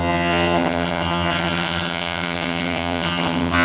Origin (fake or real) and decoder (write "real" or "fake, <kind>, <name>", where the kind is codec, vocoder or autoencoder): fake, vocoder, HiFi-GAN